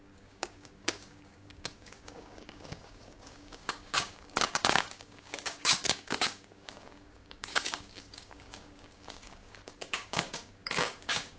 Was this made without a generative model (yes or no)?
no